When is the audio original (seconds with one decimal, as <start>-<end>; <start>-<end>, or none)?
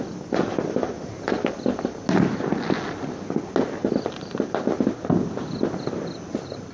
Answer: 0.0-6.7